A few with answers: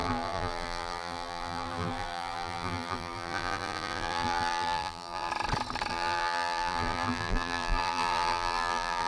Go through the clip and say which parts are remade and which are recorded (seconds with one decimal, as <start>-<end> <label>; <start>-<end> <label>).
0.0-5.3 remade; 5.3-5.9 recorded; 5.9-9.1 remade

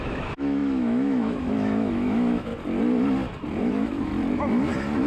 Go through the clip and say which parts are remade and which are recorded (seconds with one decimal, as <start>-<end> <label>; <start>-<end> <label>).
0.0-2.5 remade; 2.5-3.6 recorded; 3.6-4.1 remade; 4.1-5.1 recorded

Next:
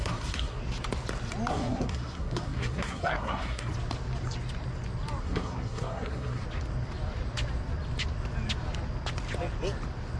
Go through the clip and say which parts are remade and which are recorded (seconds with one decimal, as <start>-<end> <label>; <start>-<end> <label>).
0.0-0.6 remade; 0.6-1.5 recorded; 1.5-3.7 remade; 3.7-5.2 recorded; 5.2-6.4 remade; 6.4-10.2 recorded

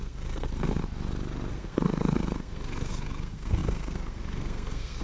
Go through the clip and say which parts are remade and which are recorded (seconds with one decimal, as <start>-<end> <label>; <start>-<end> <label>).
0.0-0.8 remade; 0.8-1.5 recorded; 1.5-5.0 remade

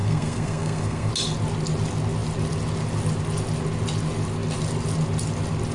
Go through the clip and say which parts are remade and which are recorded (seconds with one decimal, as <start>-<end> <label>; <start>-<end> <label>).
0.0-1.1 remade; 1.1-5.7 recorded

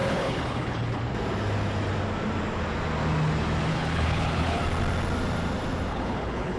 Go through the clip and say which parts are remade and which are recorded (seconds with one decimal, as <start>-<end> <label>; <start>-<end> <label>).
0.0-1.0 remade; 1.0-3.7 recorded; 3.7-4.6 remade; 4.6-5.9 recorded; 5.9-6.6 remade